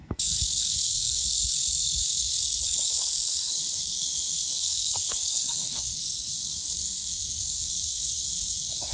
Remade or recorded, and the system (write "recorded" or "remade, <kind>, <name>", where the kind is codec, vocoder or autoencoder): remade, codec, SNAC